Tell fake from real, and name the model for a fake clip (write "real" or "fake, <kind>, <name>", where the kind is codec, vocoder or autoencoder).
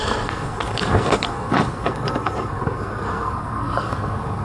fake, codec, SNAC